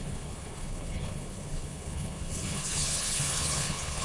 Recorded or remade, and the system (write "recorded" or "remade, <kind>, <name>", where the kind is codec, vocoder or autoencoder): remade, codec, HILCodec